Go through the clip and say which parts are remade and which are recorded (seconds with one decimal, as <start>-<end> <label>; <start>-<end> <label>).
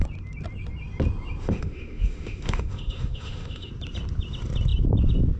0.0-1.4 recorded; 1.4-3.7 remade; 3.7-5.4 recorded